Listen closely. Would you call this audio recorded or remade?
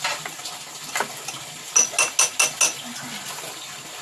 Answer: recorded